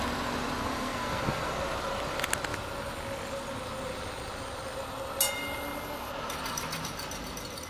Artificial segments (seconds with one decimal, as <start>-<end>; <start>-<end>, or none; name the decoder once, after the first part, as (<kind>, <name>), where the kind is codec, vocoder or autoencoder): 0.6-1.6 (codec, SNAC)